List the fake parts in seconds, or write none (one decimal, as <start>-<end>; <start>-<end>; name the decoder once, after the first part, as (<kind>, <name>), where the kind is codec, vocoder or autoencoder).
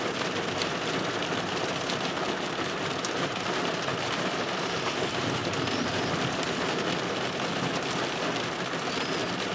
0.0-9.5 (vocoder, BigVGAN v2)